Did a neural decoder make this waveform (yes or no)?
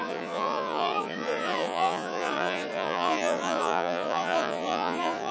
yes